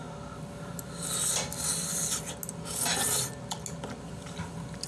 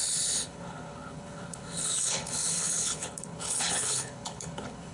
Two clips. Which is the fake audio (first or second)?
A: second